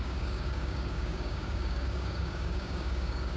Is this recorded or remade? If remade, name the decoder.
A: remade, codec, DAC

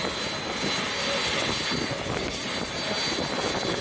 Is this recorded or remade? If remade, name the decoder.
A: recorded